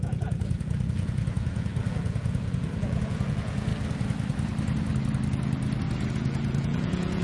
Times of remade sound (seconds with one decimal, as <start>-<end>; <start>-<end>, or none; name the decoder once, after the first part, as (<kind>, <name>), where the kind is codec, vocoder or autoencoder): 0.0-3.7 (vocoder, Vocos); 6.1-7.2